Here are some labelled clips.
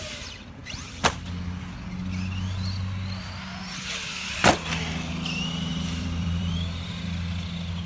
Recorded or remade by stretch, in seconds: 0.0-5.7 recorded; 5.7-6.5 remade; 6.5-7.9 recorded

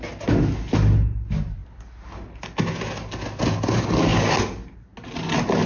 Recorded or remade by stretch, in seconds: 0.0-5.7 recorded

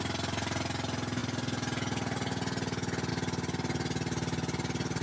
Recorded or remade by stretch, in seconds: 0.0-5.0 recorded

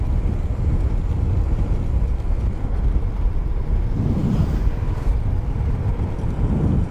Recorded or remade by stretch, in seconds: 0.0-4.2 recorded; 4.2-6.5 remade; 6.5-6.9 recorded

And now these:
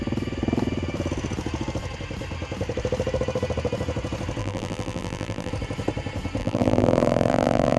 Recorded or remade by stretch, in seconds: 0.0-4.4 recorded; 4.4-5.5 remade; 5.5-6.4 recorded; 6.4-7.8 remade

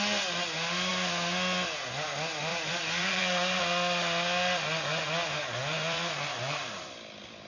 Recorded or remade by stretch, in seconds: 0.0-2.5 recorded; 2.5-3.6 remade; 3.6-5.6 recorded; 5.6-6.7 remade; 6.7-7.5 recorded